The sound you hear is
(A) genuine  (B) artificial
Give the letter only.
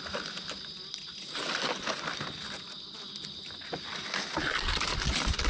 A